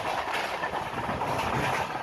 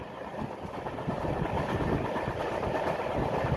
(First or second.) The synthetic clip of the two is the first